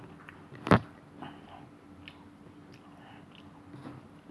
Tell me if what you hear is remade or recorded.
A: recorded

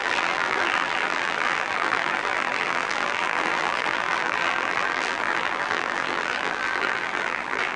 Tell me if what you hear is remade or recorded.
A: remade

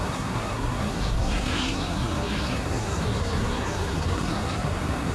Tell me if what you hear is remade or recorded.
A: remade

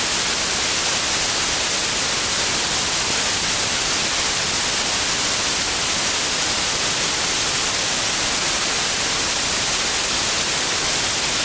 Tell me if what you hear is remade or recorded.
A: recorded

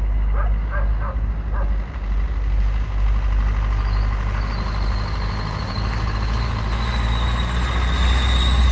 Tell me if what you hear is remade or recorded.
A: recorded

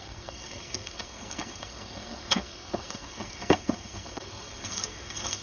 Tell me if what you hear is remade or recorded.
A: remade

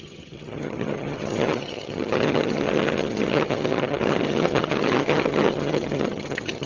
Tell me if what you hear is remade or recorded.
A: remade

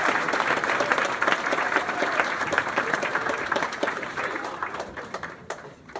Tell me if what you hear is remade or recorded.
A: remade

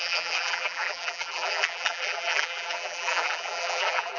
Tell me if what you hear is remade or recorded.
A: remade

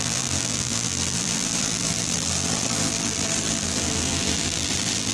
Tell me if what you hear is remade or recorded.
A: remade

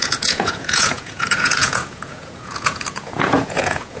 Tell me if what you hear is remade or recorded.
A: remade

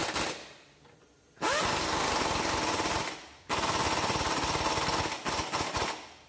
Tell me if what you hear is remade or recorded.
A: recorded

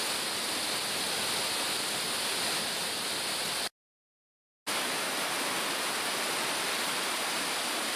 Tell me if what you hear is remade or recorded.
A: recorded